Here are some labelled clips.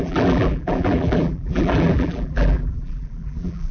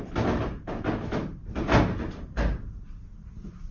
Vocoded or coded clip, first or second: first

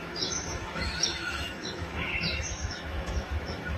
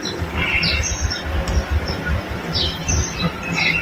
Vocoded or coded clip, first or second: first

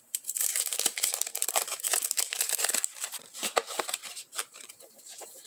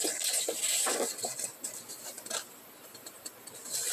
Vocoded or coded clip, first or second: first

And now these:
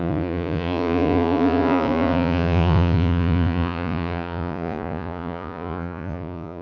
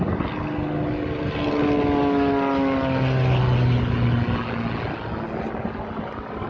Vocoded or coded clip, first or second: first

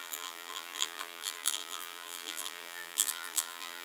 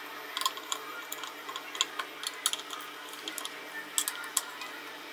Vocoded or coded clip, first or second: first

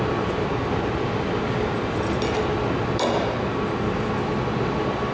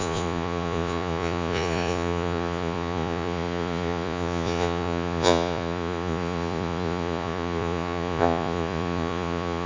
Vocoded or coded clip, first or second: second